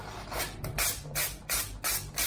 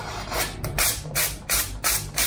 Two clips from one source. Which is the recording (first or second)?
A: first